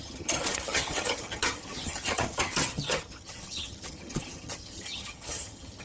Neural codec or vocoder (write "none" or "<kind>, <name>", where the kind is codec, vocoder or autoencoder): vocoder, HiFi-GAN